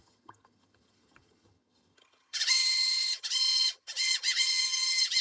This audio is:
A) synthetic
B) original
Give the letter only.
A